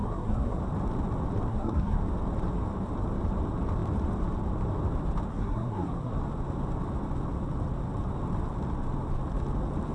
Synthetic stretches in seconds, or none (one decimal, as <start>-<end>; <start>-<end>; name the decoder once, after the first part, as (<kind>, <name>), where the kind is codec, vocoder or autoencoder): 0.0-0.6 (codec, SNAC); 1.5-2.0; 5.3-6.1